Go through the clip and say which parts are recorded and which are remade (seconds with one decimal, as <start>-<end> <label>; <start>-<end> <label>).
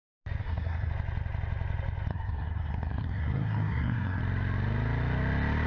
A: 0.0-0.4 recorded; 0.4-0.9 remade; 0.9-2.1 recorded; 2.1-4.2 remade; 4.2-5.7 recorded